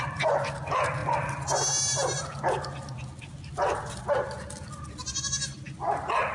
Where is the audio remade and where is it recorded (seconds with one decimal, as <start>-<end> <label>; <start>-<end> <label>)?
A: 0.0-6.3 recorded